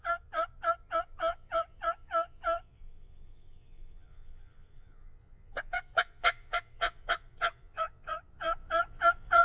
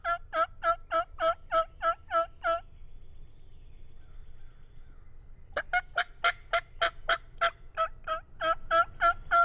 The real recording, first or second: second